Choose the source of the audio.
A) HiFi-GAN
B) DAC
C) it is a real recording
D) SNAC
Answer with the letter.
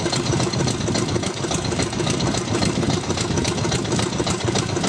B